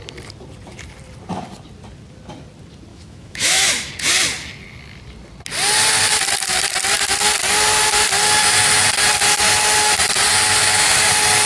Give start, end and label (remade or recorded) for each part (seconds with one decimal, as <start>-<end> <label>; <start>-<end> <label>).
0.0-2.9 recorded; 2.9-3.9 remade; 3.9-11.5 recorded